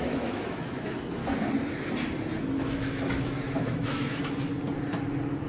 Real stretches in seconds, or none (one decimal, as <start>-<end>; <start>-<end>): 1.2-2.4; 4.5-5.5